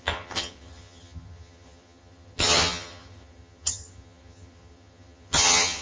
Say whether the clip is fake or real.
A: fake